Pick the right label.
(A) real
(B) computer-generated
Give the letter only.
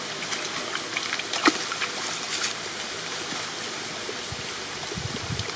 A